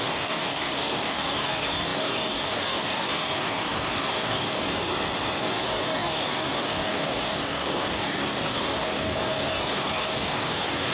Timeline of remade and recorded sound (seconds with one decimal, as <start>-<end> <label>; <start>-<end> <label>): 0.0-4.9 remade; 4.9-5.4 recorded; 5.4-10.9 remade